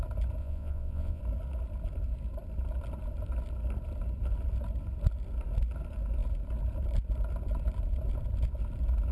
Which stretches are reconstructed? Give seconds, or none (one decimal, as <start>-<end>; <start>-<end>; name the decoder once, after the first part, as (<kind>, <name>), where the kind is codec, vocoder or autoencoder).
0.4-1.2 (vocoder, Vocos)